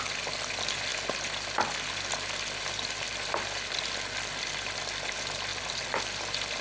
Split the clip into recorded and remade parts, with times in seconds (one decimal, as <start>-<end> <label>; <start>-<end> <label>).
0.0-6.6 recorded